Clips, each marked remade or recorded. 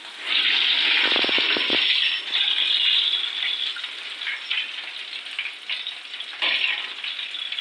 recorded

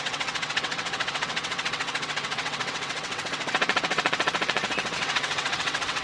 remade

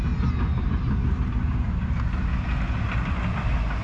recorded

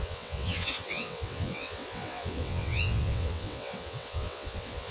remade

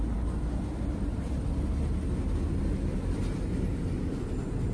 recorded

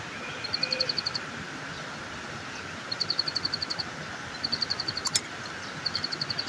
recorded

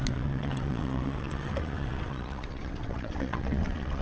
remade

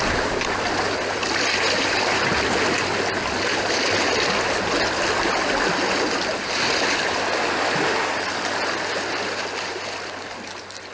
recorded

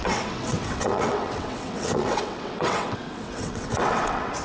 remade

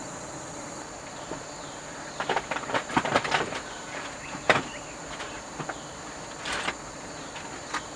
recorded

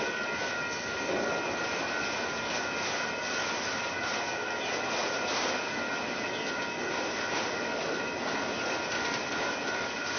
recorded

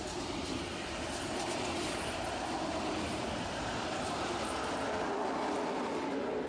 recorded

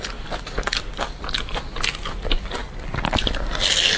recorded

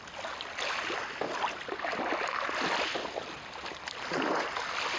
recorded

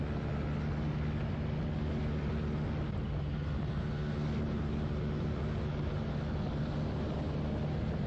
recorded